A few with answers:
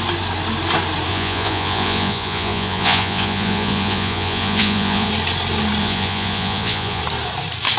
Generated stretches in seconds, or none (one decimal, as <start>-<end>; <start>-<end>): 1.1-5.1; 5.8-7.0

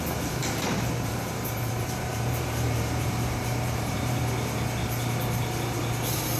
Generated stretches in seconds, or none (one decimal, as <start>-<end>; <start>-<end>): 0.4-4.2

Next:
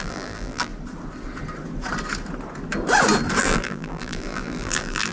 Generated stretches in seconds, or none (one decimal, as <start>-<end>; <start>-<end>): 0.0-0.7; 3.4-5.1

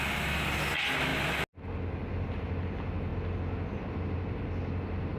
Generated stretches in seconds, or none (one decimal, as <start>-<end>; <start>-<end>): none

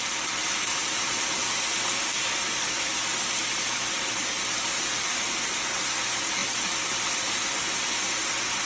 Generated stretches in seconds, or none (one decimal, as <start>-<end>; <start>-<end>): 0.4-2.8; 6.4-7.3